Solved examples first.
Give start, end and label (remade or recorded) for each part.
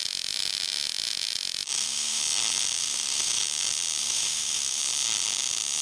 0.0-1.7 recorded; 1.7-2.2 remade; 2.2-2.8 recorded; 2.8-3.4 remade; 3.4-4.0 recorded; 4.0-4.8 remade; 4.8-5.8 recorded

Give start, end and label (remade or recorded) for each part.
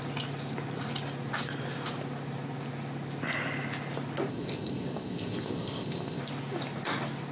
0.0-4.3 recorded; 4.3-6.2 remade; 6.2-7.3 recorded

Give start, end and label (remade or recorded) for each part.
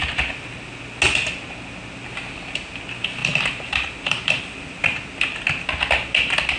0.0-3.2 recorded; 3.2-4.8 remade; 4.8-6.6 recorded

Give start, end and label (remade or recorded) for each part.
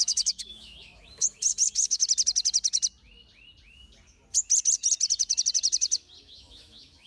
0.0-2.0 remade; 2.0-6.2 recorded; 6.2-7.1 remade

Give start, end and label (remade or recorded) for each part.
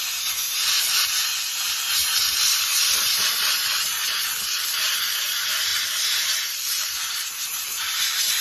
0.0-2.0 remade; 2.0-5.3 recorded; 5.3-5.7 remade; 5.7-6.6 recorded; 6.6-8.4 remade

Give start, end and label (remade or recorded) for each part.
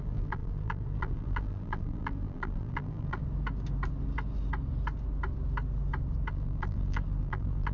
0.0-3.2 remade; 3.2-6.3 recorded; 6.3-7.7 remade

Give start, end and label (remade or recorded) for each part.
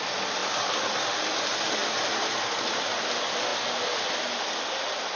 0.0-5.2 recorded